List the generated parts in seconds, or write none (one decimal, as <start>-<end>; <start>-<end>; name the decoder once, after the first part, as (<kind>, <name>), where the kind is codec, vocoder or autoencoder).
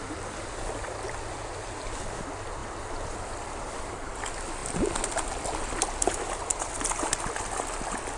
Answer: 0.0-4.6 (vocoder, BigVGAN v2)